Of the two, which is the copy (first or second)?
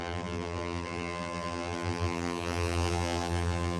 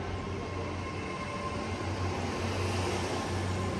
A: first